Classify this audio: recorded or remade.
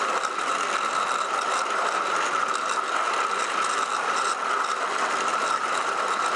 recorded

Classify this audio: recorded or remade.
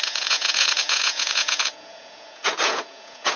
remade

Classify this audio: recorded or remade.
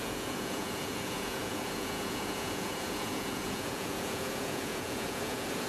remade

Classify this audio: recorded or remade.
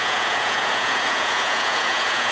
remade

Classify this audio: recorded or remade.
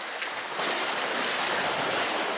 recorded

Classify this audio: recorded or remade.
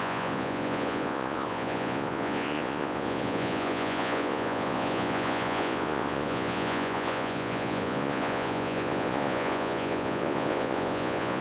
remade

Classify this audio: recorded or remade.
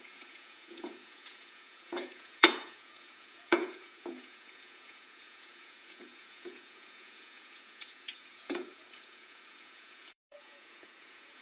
remade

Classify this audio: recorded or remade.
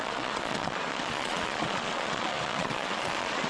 remade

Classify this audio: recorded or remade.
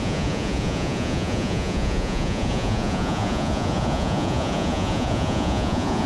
remade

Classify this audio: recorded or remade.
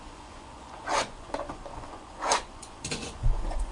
remade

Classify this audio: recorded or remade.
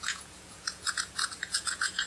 remade